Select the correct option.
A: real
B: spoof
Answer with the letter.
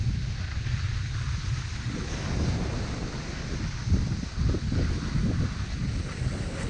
A